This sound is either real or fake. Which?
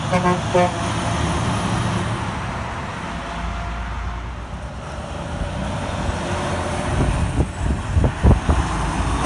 real